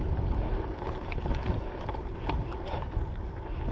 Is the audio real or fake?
fake